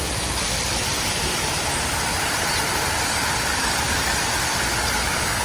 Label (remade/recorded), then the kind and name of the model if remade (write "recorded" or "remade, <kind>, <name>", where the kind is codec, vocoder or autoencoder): remade, vocoder, BigVGAN v2